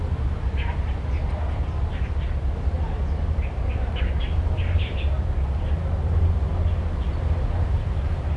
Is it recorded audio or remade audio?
recorded